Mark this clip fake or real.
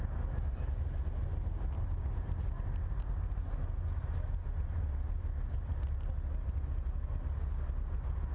real